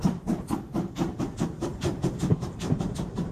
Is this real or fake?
fake